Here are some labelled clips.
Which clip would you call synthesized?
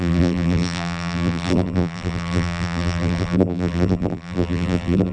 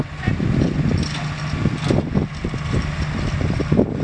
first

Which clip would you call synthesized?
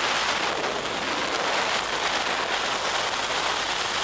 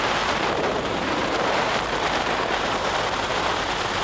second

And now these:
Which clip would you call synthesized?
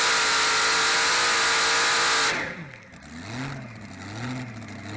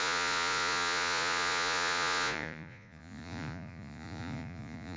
second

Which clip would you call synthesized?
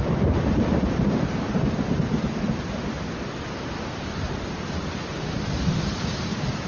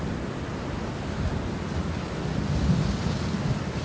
first